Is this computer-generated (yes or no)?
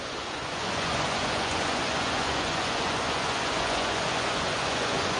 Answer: yes